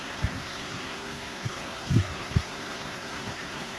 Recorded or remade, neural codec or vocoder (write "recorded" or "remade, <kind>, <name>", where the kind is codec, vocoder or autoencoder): remade, codec, SNAC